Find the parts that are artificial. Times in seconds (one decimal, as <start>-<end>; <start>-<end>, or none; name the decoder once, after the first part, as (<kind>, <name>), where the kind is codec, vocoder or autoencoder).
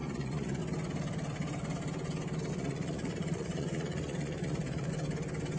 0.0-0.6 (vocoder, Vocos); 2.5-4.9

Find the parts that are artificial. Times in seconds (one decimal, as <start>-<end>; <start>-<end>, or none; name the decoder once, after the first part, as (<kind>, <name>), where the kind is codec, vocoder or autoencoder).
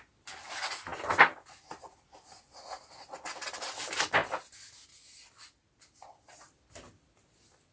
none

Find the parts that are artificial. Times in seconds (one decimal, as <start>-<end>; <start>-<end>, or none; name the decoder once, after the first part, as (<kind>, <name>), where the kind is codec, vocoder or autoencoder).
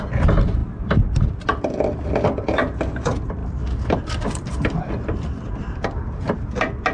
0.6-1.6 (vocoder, BigVGAN v2); 3.4-4.9